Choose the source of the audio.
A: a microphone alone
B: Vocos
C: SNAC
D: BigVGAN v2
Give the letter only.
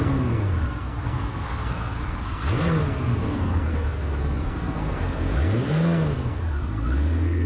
C